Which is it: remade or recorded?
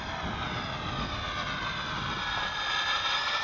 recorded